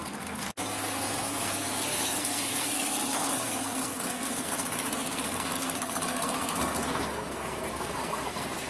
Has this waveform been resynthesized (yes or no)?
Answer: yes